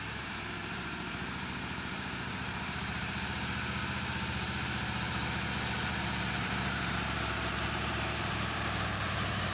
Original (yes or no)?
no